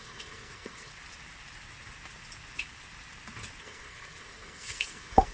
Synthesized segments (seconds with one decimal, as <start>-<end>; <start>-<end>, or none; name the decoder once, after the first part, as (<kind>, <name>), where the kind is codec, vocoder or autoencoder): 0.0-0.9 (codec, SNAC); 3.6-5.3